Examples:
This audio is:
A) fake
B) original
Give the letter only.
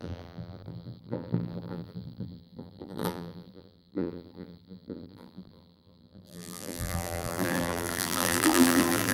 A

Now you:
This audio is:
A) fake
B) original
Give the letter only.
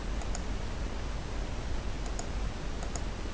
B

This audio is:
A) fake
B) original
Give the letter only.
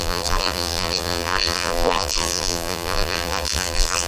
A